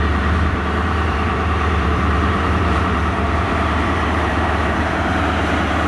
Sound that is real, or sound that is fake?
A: fake